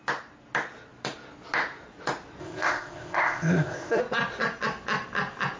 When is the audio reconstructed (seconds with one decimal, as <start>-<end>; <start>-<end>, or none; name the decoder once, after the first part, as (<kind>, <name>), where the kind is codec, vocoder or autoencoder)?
2.4-4.0 (codec, ZipCodec)